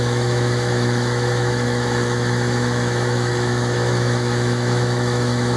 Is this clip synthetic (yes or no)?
yes